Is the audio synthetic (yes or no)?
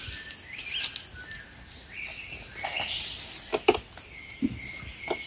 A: yes